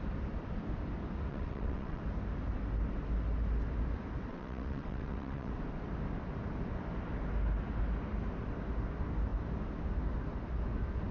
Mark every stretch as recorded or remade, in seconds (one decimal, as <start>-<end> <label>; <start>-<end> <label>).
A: 0.0-1.3 recorded; 1.3-2.0 remade; 2.0-4.3 recorded; 4.3-5.5 remade; 5.5-11.1 recorded